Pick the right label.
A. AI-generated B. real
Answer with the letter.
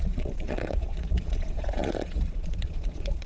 A